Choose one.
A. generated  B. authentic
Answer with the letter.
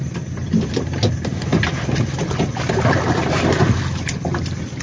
B